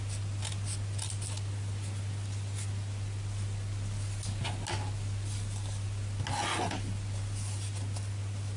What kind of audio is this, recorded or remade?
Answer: recorded